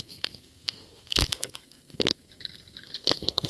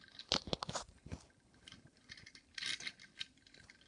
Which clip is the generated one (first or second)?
first